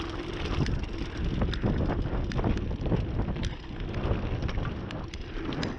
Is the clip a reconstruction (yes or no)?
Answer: no